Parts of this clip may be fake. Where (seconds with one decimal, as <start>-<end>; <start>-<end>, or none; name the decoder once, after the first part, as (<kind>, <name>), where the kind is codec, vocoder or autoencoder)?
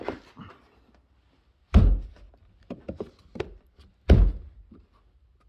none